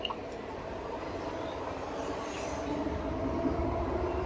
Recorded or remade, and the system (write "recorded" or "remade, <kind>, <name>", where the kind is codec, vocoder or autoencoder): recorded